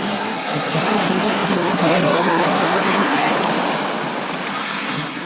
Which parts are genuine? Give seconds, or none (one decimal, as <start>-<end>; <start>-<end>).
3.3-4.5

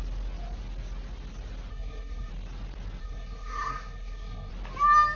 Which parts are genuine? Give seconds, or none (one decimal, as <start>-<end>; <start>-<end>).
0.0-1.7; 2.3-3.0; 4.5-5.2

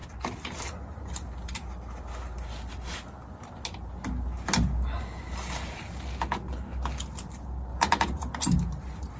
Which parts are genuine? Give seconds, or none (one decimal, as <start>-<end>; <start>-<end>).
0.0-7.7; 8.3-9.2

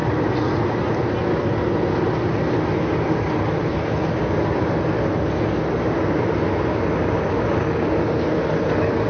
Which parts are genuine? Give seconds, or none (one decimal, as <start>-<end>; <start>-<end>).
0.0-9.1

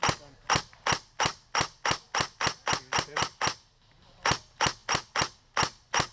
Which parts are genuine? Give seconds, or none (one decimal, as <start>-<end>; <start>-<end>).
0.0-6.1

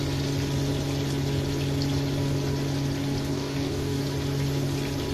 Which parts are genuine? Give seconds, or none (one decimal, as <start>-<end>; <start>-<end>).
0.0-3.3; 4.0-5.1

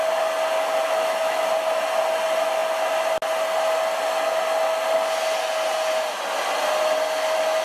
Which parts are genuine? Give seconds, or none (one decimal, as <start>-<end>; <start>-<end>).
0.0-0.8; 1.4-7.6